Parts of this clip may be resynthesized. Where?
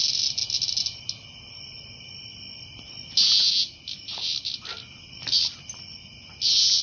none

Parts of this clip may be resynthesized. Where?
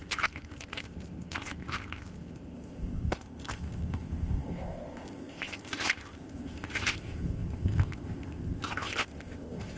0.0-9.8 (codec, ZipCodec)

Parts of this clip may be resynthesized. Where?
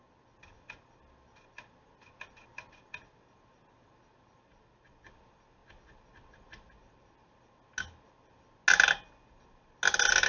none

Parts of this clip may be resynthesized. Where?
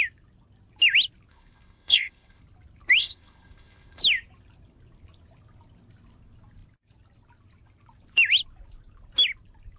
1.3-2.4 (codec, ZipCodec); 3.0-4.0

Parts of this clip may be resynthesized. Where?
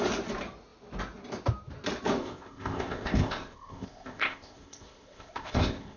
2.2-6.0 (codec, ZipCodec)